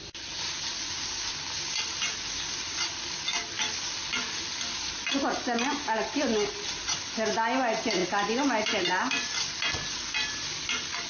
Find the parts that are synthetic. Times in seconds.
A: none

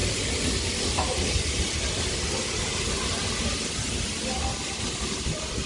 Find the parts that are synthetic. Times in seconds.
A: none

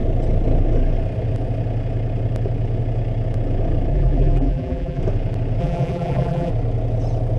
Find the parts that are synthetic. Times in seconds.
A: 3.9-5.0 (vocoder, BigVGAN v2); 5.6-6.5